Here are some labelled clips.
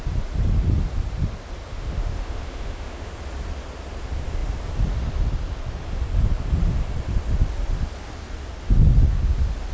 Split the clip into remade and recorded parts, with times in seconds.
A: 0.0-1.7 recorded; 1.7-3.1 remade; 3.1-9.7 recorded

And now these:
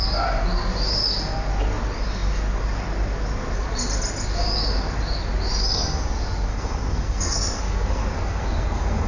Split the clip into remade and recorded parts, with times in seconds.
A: 0.0-6.5 recorded; 6.5-9.1 remade